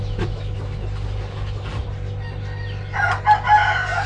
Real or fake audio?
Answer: real